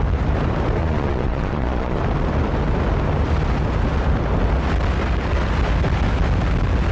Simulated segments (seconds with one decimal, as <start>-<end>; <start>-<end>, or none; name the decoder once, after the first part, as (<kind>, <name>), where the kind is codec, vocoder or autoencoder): 0.8-2.0 (vocoder, Vocos)